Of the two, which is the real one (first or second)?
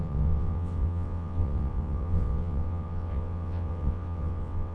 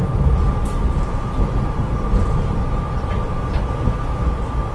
second